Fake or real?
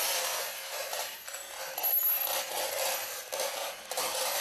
real